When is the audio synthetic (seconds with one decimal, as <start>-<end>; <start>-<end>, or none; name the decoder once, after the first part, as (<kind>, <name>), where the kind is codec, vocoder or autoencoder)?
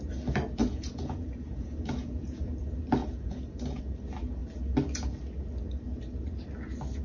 0.6-2.4 (vocoder, Vocos); 3.0-3.8